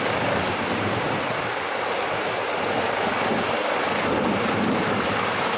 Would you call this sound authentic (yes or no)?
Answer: yes